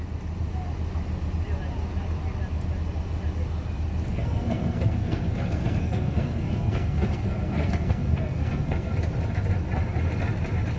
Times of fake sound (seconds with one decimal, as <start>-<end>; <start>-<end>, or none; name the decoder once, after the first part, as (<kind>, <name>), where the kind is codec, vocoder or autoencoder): 4.1-8.9 (codec, SNAC)